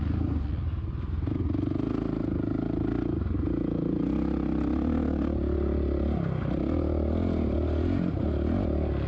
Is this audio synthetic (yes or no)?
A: no